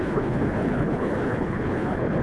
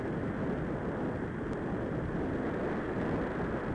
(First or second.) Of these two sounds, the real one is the second